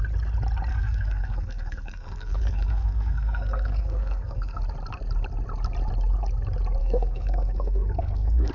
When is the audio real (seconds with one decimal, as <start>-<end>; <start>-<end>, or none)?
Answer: 0.0-0.7; 4.6-6.8

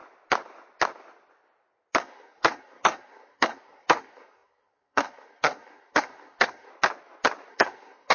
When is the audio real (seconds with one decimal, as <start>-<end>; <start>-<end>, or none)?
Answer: 0.0-2.0; 6.7-7.5

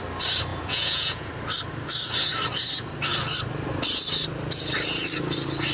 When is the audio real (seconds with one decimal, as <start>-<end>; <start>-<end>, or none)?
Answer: 0.0-0.5; 1.3-5.7

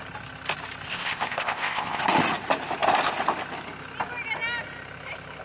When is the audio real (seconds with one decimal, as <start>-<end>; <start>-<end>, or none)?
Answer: 0.0-0.9; 2.0-5.4

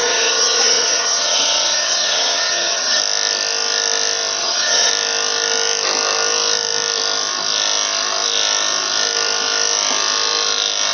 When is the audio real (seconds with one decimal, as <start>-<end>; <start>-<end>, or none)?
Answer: 3.0-4.4; 4.9-10.9

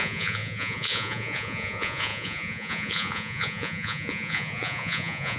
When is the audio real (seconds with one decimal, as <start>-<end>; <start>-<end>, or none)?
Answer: none